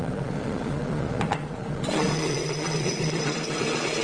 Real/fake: fake